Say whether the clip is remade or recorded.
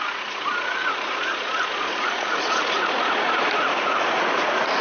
remade